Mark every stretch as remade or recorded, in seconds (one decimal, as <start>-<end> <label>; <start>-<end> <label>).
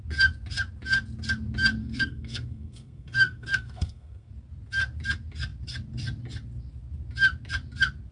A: 0.0-1.8 recorded; 1.8-4.3 remade; 4.3-8.1 recorded